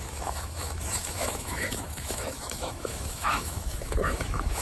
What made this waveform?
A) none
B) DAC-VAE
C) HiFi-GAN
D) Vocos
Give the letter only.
B